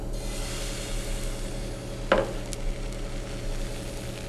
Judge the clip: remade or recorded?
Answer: recorded